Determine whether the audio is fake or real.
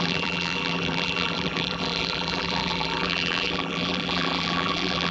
fake